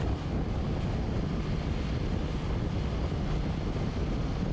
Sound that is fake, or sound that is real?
real